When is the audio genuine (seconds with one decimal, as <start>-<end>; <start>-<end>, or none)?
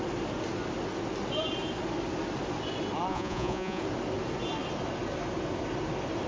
0.0-3.1; 3.8-6.3